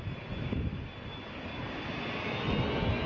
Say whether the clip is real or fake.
real